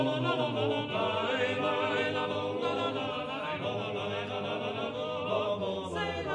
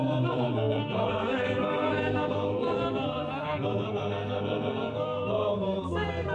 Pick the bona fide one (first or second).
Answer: first